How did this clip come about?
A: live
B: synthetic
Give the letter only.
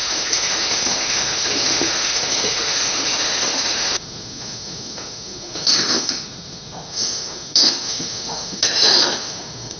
B